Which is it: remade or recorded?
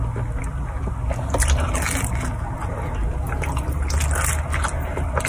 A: recorded